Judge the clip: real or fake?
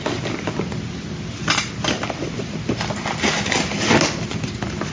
real